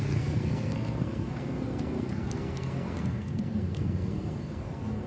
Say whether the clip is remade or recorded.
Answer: remade